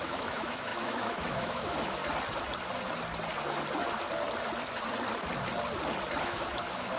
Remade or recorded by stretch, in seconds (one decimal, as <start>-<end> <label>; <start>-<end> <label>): 0.0-2.0 remade; 2.0-6.2 recorded; 6.2-7.0 remade